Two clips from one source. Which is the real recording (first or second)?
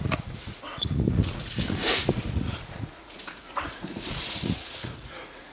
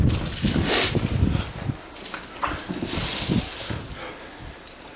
second